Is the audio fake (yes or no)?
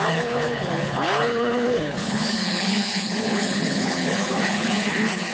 yes